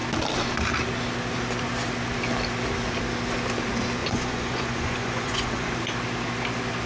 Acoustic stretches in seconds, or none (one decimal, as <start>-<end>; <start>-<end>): 0.0-4.0; 5.7-6.9

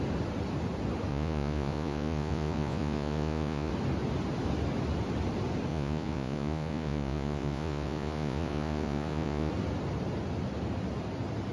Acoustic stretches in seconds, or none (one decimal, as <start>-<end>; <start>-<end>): 0.0-1.1; 3.7-5.7; 9.5-11.5